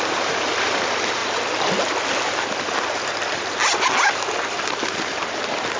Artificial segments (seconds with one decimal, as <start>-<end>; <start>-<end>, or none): none